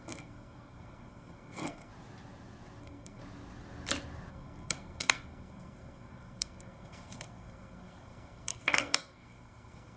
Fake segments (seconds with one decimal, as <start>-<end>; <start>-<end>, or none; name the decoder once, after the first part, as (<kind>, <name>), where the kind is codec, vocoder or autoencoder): 0.0-1.9 (codec, SNAC); 2.8-3.2; 4.3-10.0